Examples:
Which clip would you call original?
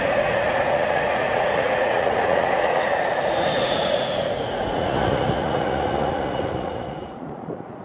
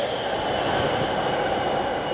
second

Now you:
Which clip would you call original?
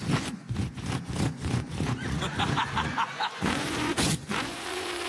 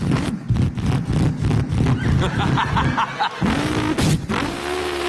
second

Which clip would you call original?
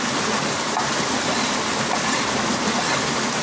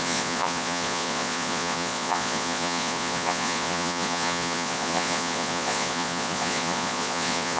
first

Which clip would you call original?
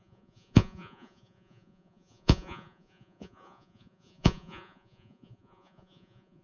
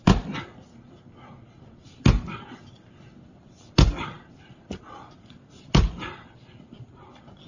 second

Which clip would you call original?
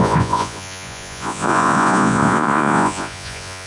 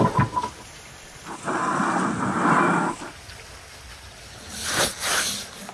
second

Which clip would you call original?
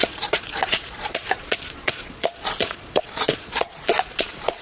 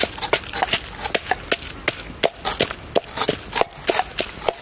second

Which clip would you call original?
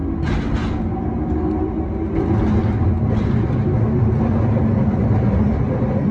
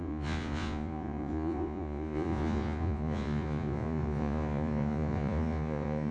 first